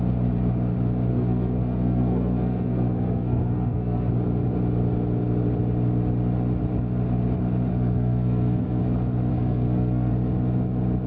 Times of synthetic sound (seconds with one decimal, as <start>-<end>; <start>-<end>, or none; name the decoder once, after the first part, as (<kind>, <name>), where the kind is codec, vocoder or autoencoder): 1.1-4.1 (codec, SNAC); 7.7-8.8; 9.3-10.1